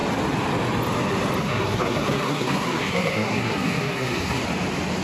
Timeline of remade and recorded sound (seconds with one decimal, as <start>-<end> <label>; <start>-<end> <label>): 0.0-1.4 recorded; 1.4-4.4 remade; 4.4-5.0 recorded